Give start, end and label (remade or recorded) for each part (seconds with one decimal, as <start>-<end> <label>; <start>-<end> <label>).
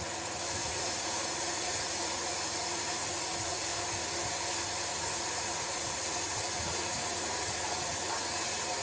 0.0-3.7 remade; 3.7-4.9 recorded; 4.9-8.8 remade